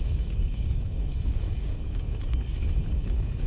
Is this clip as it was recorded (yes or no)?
no